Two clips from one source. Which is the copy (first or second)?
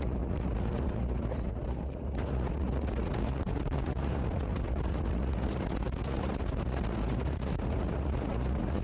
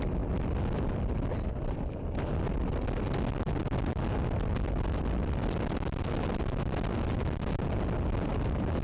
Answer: first